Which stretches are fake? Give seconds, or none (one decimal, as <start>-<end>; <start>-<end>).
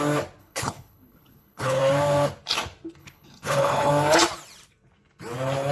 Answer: 0.4-1.8; 3.0-3.9